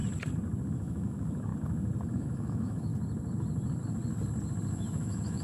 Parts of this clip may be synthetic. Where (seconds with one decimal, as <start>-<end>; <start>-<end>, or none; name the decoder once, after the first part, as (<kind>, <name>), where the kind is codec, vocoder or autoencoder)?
0.7-1.5 (autoencoder, DAC-VAE); 2.1-2.9; 4.7-5.4